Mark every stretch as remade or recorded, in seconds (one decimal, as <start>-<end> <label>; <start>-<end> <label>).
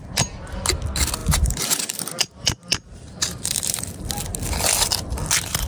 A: 0.0-1.2 recorded; 1.2-4.0 remade; 4.0-5.7 recorded